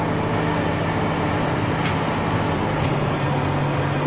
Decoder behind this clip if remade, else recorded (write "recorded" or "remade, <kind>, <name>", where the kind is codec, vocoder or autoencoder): recorded